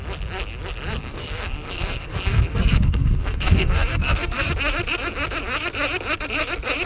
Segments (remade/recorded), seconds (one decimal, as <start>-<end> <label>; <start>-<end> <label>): 0.0-1.0 recorded; 1.0-4.5 remade; 4.5-6.9 recorded